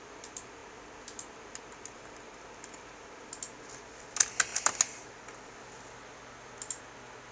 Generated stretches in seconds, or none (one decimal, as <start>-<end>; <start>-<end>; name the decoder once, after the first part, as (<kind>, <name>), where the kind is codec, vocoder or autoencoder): none